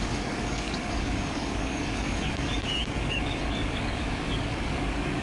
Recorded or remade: remade